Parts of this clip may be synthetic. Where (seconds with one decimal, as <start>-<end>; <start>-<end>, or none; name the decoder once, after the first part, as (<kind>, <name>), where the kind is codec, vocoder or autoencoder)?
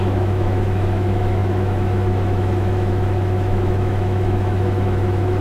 0.0-5.4 (autoencoder, DAC-VAE)